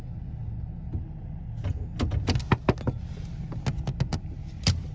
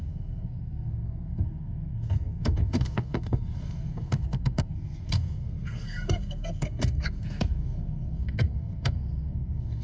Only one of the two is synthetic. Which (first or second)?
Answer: second